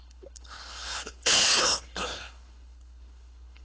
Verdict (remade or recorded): remade